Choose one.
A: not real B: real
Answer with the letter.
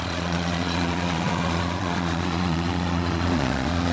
A